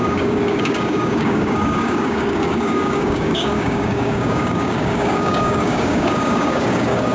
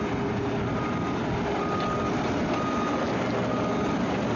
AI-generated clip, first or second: first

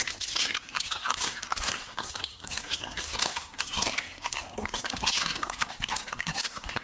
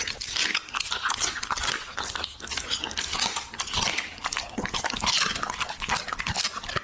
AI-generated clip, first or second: first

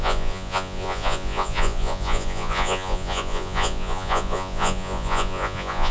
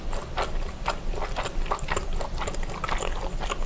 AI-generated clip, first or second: first